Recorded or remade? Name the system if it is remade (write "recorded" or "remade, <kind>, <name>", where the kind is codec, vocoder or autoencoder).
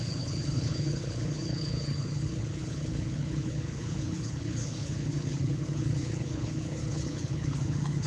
remade, codec, HILCodec